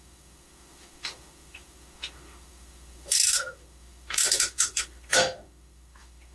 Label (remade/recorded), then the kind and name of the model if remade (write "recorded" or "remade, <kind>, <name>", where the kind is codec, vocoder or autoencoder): remade, autoencoder, DAC-VAE